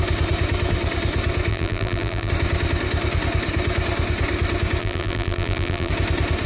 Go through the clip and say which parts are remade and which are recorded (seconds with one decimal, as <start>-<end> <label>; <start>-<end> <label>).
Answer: 0.0-1.5 recorded; 1.5-2.3 remade; 2.3-4.8 recorded; 4.8-5.9 remade; 5.9-6.5 recorded